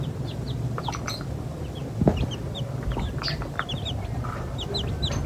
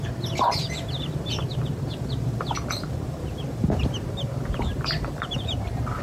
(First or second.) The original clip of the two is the first